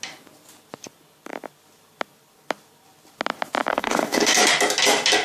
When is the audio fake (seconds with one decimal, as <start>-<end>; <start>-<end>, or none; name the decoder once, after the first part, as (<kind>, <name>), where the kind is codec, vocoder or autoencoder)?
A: 3.7-4.4 (codec, DAC)